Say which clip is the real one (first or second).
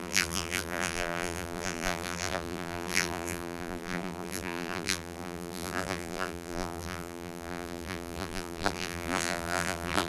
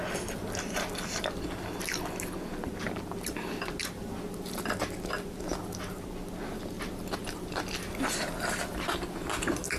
second